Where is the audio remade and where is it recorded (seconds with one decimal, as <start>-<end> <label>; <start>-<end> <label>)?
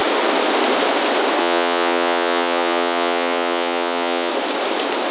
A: 0.0-1.4 recorded; 1.4-4.3 remade; 4.3-5.1 recorded